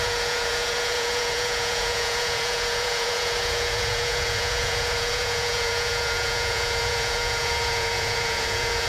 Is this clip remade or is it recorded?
remade